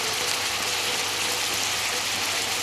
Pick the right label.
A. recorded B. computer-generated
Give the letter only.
A